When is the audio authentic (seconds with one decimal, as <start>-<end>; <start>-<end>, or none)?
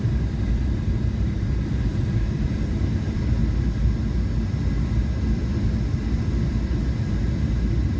3.4-8.0